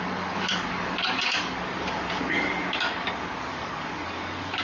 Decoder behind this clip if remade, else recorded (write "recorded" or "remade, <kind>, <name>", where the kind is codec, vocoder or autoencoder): remade, codec, DAC